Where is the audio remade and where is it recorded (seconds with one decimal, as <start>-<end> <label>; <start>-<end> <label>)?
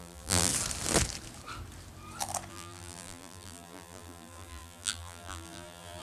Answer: 0.0-0.5 remade; 0.5-2.5 recorded; 2.5-6.0 remade